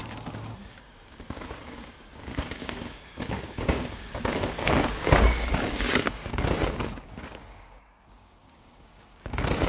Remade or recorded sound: remade